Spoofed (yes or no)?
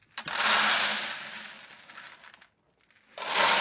no